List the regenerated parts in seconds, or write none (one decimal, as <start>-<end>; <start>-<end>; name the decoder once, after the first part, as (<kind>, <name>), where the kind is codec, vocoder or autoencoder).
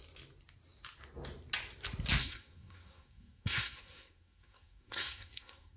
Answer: 2.2-5.8 (codec, SNAC)